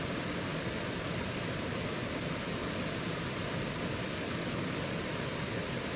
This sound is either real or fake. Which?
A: real